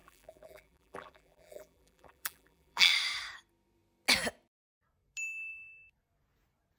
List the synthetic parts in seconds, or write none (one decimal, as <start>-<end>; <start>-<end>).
0.0-2.9